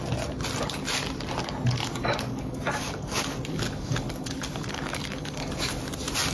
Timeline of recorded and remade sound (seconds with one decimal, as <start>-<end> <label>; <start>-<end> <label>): 0.0-1.8 recorded; 1.8-5.5 remade; 5.5-6.3 recorded